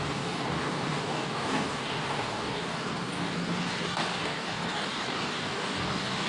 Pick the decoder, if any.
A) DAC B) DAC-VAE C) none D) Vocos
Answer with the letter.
A